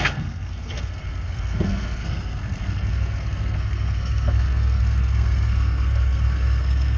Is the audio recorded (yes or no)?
no